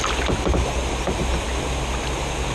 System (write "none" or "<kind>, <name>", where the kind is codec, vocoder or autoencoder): none